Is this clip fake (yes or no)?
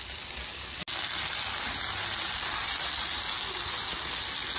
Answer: no